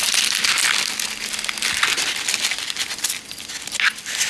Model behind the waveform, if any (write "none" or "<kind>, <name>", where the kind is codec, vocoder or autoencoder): none